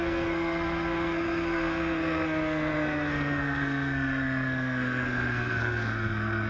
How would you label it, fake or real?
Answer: fake